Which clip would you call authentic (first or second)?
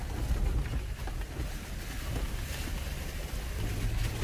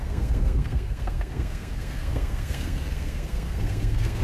first